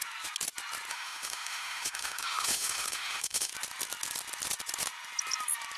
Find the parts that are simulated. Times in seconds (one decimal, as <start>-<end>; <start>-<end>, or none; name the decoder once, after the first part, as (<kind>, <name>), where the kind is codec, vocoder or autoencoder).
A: 0.9-3.5 (autoencoder, DAC-VAE)